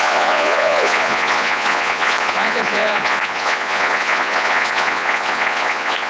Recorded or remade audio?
remade